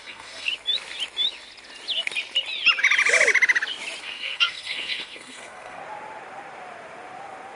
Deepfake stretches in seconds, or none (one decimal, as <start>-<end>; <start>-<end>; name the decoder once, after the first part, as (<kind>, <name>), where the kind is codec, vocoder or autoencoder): 0.0-0.5 (codec, SNAC); 4.0-5.8